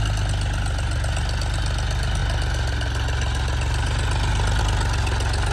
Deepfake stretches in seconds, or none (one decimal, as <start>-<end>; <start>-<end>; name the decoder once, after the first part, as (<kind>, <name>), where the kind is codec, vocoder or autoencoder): none